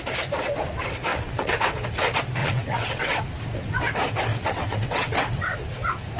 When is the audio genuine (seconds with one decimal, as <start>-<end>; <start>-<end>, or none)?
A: 0.0-1.1; 1.6-2.4; 3.2-4.3; 5.2-6.2